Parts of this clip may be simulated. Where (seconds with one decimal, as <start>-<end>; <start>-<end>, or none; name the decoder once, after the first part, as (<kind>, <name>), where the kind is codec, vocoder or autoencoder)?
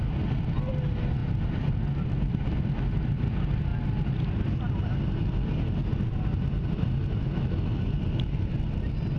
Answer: none